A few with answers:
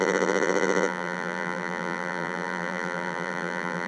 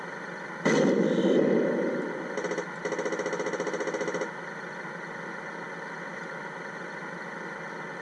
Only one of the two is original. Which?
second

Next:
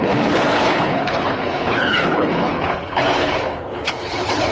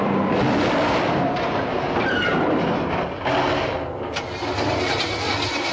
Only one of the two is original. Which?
second